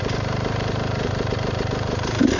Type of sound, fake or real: fake